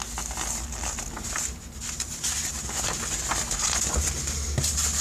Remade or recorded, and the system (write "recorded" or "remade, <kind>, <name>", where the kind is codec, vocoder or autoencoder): recorded